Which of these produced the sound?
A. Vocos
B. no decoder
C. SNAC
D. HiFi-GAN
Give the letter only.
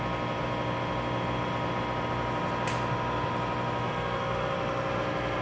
B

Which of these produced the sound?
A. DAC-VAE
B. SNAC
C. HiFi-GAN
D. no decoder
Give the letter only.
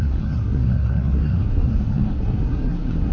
B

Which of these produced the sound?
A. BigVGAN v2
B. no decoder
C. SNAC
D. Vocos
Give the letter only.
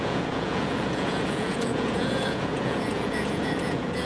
D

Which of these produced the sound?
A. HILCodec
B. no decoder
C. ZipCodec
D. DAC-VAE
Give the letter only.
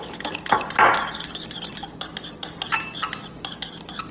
B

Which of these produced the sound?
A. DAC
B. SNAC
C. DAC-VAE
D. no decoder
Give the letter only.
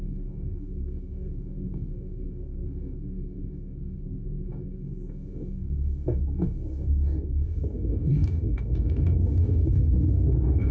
A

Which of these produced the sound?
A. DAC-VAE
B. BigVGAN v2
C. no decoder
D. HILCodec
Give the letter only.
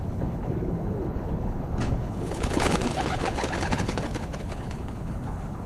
D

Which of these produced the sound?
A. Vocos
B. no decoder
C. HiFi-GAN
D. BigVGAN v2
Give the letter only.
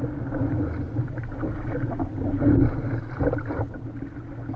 B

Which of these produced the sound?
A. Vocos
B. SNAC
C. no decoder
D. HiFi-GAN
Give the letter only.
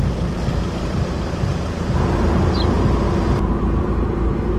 C